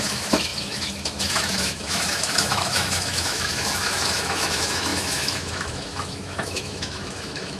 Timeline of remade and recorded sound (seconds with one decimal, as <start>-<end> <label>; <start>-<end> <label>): 0.0-7.6 remade